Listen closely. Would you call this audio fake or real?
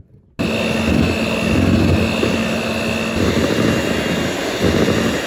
real